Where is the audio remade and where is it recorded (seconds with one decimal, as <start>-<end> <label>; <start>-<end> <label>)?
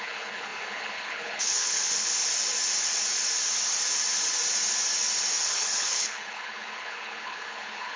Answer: 0.0-2.1 remade; 2.1-5.4 recorded; 5.4-8.0 remade